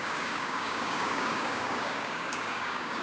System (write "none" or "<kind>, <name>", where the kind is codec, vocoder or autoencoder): codec, DAC